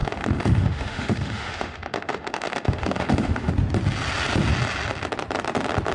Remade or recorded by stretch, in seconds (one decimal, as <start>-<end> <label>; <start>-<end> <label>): 0.0-3.5 remade; 3.5-5.9 recorded